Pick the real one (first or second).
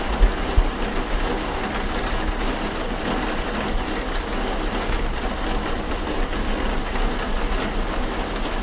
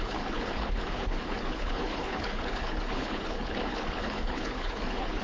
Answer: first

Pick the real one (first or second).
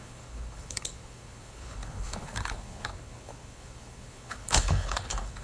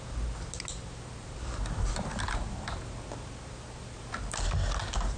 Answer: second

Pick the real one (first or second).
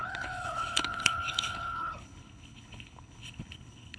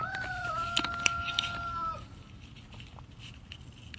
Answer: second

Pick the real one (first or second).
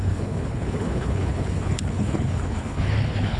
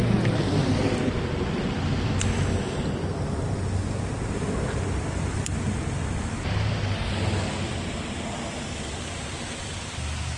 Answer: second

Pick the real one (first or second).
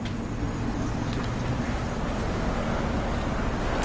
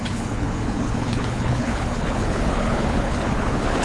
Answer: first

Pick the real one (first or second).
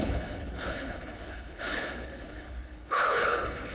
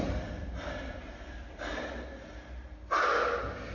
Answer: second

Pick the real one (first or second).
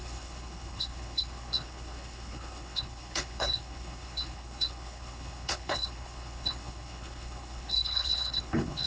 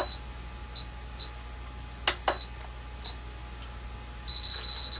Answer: second